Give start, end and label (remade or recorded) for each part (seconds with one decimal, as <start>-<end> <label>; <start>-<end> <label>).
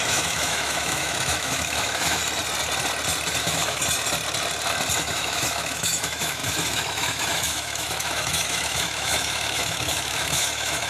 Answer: 0.0-2.2 remade; 2.2-3.4 recorded; 3.4-3.8 remade; 3.8-5.0 recorded; 5.0-10.9 remade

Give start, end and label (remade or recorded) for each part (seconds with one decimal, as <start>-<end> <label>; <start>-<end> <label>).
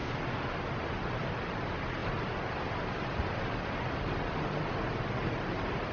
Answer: 0.0-5.9 recorded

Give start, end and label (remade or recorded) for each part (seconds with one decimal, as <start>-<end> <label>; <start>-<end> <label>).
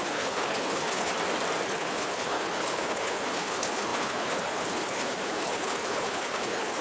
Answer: 0.0-1.1 remade; 1.1-1.7 recorded; 1.7-6.8 remade